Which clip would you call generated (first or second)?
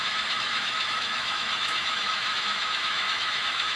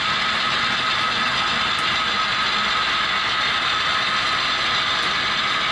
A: first